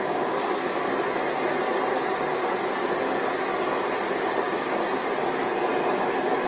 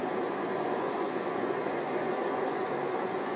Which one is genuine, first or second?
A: first